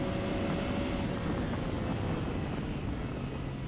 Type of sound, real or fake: real